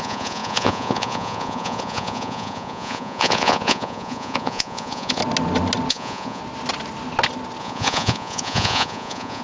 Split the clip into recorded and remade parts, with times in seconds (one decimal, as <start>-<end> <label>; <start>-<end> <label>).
0.0-5.2 remade; 5.2-5.9 recorded; 5.9-6.4 remade; 6.4-7.6 recorded; 7.6-9.4 remade

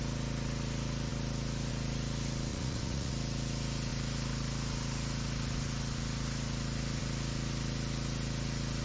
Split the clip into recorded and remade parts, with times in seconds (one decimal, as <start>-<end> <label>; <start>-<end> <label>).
0.0-2.5 recorded; 2.5-3.1 remade; 3.1-8.8 recorded